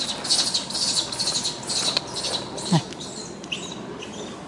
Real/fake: real